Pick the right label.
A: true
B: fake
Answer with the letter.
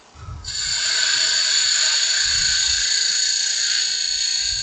A